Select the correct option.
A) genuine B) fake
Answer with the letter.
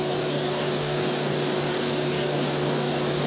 B